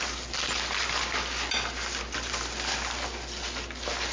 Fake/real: real